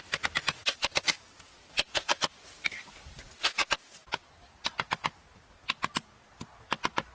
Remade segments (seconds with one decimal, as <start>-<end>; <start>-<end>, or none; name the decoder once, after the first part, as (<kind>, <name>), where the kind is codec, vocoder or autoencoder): none